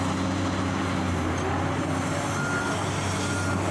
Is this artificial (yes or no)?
no